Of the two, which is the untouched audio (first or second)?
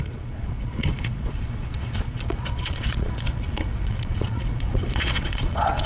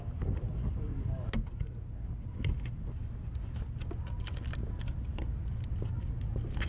second